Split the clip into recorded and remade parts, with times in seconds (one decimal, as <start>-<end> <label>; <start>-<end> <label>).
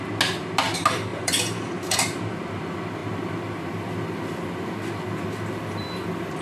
0.0-1.1 recorded; 1.1-2.6 remade; 2.6-6.4 recorded